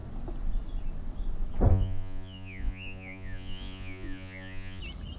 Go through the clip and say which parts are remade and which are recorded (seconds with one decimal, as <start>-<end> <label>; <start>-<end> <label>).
0.0-1.7 recorded; 1.7-4.8 remade; 4.8-5.2 recorded